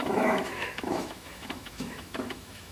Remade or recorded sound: remade